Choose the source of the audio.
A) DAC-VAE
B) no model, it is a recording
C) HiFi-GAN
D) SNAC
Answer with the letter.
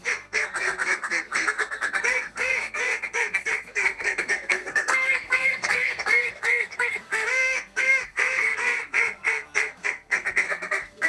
D